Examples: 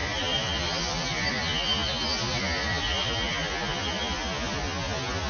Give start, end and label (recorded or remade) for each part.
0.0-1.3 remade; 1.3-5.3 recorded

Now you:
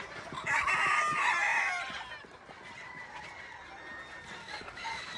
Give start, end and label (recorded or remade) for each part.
0.0-4.4 recorded; 4.4-5.2 remade

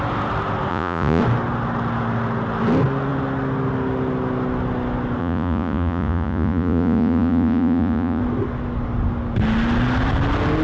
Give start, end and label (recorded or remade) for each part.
0.0-0.7 recorded; 0.7-1.2 remade; 1.2-5.2 recorded; 5.2-8.2 remade; 8.2-10.6 recorded

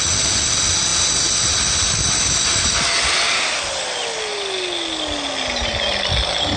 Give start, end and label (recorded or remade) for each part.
0.0-6.6 recorded